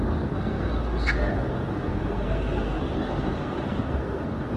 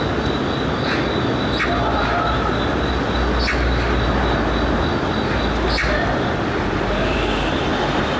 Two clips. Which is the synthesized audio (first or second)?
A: first